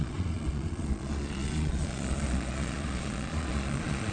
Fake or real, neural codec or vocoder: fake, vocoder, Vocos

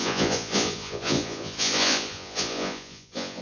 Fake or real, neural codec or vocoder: fake, vocoder, Vocos